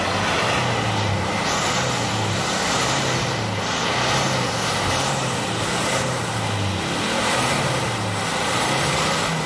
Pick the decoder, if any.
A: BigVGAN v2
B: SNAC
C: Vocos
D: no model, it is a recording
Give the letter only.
D